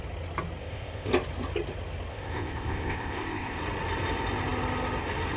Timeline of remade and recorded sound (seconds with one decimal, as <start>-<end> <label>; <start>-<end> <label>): 0.0-0.6 recorded; 0.6-1.1 remade; 1.1-2.1 recorded; 2.1-3.6 remade; 3.6-5.4 recorded